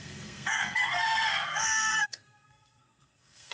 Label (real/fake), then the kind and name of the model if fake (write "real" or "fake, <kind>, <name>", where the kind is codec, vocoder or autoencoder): fake, codec, SNAC